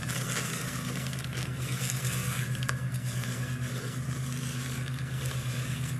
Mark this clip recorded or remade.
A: remade